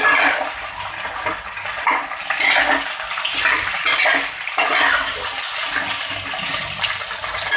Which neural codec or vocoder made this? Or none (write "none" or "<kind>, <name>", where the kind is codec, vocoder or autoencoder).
none